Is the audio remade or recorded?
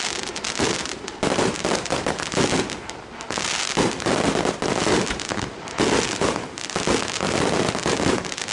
recorded